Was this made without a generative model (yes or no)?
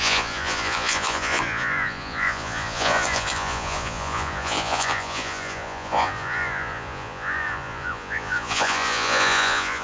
no